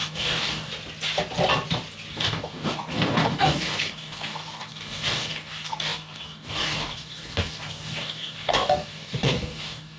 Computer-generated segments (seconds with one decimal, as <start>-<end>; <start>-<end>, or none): 0.0-0.7; 2.1-10.0